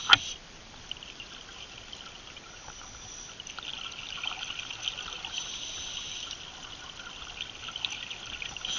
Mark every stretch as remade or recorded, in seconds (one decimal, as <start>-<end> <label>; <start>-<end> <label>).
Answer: 0.0-8.8 recorded